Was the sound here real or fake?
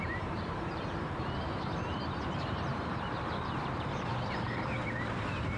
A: fake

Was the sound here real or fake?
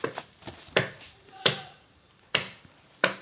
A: fake